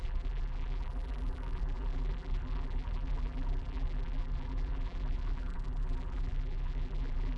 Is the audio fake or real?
fake